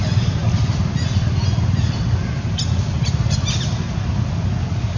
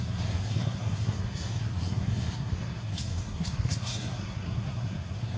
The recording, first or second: first